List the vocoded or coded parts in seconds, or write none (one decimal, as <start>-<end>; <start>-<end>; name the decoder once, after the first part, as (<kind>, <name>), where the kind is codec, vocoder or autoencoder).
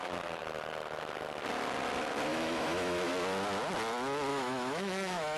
2.3-3.1 (autoencoder, DAC-VAE); 4.3-5.4